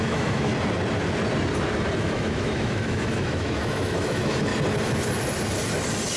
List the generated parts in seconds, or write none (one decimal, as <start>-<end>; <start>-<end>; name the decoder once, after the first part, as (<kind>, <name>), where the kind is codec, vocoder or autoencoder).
0.0-0.5 (autoencoder, DAC-VAE); 2.0-4.5